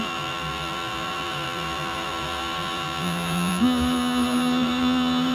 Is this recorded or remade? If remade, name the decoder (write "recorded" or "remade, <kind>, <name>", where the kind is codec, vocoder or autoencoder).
remade, vocoder, BigVGAN v2